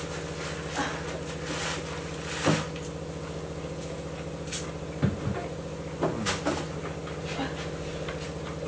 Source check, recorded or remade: recorded